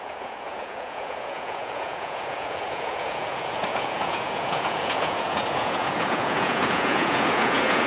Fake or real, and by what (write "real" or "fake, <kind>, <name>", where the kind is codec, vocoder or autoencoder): fake, vocoder, Vocos